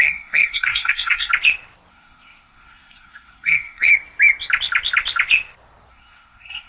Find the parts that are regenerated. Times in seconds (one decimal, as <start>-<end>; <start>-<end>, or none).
0.0-1.3; 1.9-3.9; 5.9-6.7